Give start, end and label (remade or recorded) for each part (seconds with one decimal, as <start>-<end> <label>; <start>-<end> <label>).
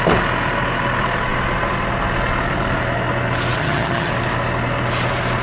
0.0-3.6 recorded; 3.6-4.1 remade; 4.1-5.4 recorded